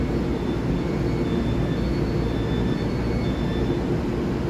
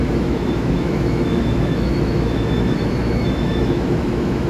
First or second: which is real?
first